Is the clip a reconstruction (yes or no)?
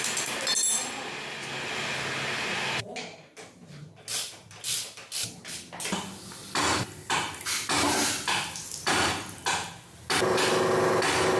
no